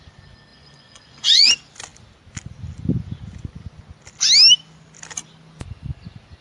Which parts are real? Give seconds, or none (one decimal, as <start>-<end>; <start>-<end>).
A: 0.0-0.5; 1.5-6.4